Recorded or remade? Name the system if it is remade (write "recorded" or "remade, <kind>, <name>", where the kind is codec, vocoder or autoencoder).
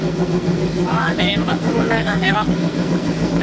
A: remade, codec, SNAC